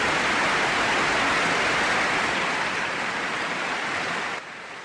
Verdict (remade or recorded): recorded